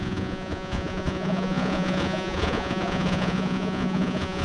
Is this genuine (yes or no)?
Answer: no